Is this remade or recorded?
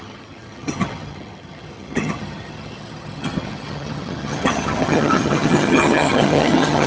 remade